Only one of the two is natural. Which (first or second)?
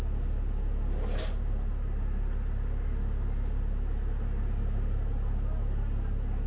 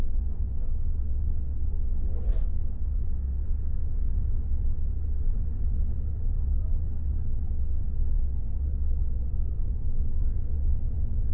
first